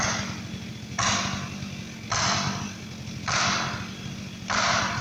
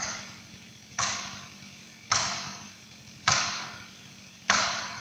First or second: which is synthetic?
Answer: second